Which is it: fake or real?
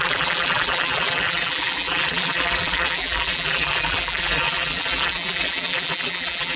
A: fake